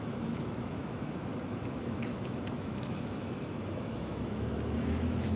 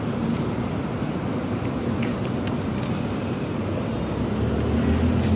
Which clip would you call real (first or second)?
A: second